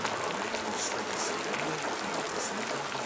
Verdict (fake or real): real